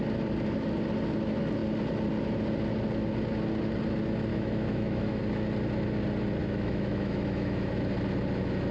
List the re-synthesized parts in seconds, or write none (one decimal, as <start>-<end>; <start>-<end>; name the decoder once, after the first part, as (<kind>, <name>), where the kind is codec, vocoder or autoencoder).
4.3-5.2 (autoencoder, DAC-VAE); 6.4-7.7